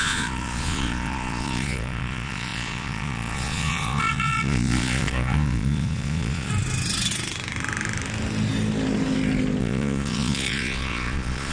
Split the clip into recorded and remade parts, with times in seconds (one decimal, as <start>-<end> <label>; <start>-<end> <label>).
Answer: 0.0-6.5 remade; 6.5-9.6 recorded; 9.6-11.5 remade